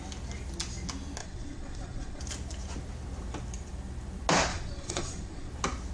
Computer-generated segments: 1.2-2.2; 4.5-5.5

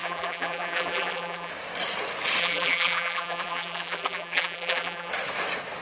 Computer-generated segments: 0.0-1.5; 2.4-5.1